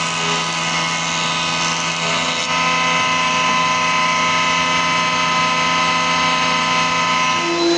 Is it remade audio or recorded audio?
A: recorded